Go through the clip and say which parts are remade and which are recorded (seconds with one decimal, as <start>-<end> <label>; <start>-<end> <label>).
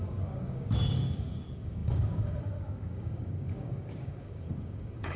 0.0-5.2 remade